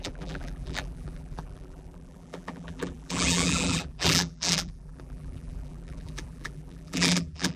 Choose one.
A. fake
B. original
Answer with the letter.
A